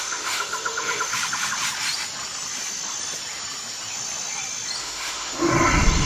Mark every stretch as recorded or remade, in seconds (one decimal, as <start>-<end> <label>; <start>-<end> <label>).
0.0-1.1 remade; 1.1-4.8 recorded; 4.8-5.5 remade; 5.5-6.1 recorded